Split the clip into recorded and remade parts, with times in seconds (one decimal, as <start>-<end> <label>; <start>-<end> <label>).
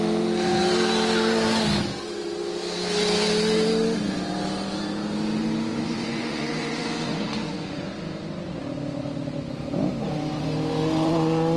0.0-5.7 recorded; 5.7-7.9 remade; 7.9-11.6 recorded